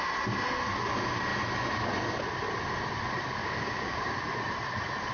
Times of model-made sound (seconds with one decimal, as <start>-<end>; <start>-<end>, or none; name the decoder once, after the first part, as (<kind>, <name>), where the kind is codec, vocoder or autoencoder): 3.4-4.2 (codec, DAC)